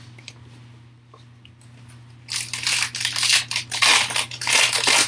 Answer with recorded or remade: recorded